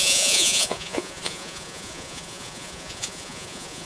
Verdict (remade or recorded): remade